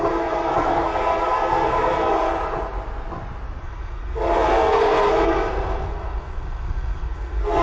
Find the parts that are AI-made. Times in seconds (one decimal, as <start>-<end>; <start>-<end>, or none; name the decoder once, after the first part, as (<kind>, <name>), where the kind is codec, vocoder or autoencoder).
0.0-2.2 (codec, SNAC); 3.6-7.6